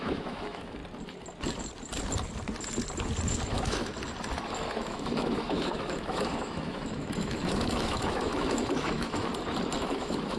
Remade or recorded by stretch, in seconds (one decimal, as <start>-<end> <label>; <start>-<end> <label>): 0.0-0.8 remade; 0.8-3.5 recorded; 3.5-3.9 remade; 3.9-4.8 recorded; 4.8-9.3 remade; 9.3-9.8 recorded; 9.8-10.4 remade